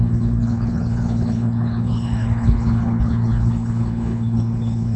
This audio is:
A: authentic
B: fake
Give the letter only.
B